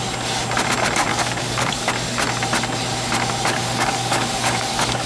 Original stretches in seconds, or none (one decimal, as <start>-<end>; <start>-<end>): 0.0-1.1; 1.9-3.5